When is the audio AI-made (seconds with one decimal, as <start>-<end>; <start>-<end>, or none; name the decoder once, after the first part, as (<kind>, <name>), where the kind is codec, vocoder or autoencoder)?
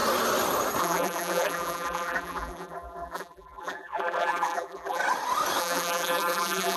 0.8-5.0 (vocoder, BigVGAN v2); 5.6-6.8